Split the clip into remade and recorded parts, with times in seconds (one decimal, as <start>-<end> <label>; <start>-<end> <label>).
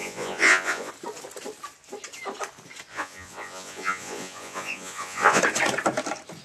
0.0-0.9 remade; 0.9-2.9 recorded; 2.9-5.4 remade; 5.4-6.4 recorded